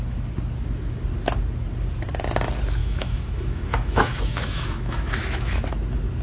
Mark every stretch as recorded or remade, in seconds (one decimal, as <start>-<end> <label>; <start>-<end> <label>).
0.0-2.8 recorded; 2.8-5.5 remade; 5.5-6.2 recorded